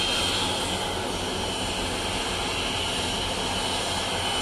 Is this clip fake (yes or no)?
no